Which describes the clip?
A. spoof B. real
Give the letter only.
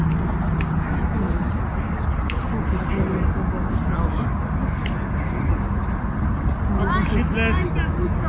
B